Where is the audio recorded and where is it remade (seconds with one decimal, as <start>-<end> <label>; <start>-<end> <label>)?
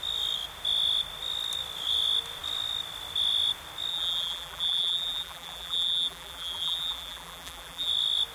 0.0-3.9 recorded; 3.9-7.9 remade; 7.9-8.3 recorded